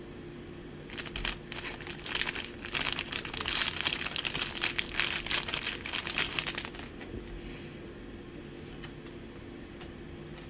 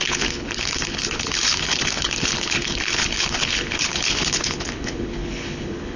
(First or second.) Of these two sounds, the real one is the first